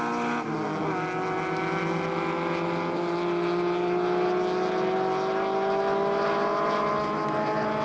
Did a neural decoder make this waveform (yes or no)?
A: no